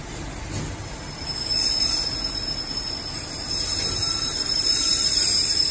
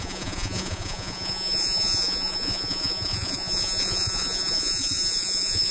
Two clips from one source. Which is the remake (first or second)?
second